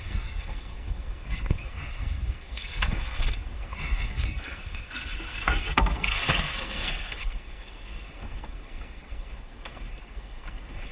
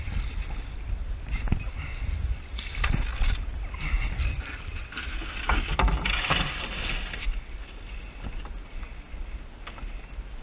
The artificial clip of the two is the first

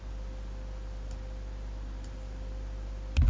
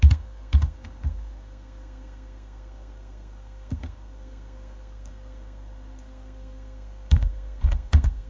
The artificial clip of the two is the second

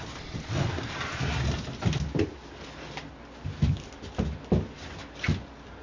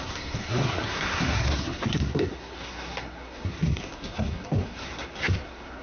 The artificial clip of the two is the second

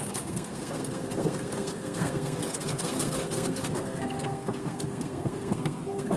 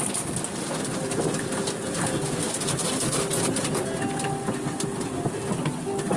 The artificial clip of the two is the first